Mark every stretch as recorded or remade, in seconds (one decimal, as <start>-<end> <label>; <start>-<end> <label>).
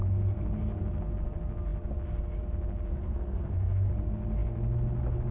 0.0-2.9 recorded; 2.9-3.9 remade; 3.9-5.3 recorded